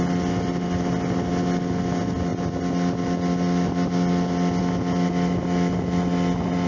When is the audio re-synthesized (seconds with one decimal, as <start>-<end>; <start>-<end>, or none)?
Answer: none